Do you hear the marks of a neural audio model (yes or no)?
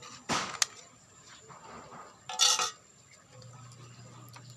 no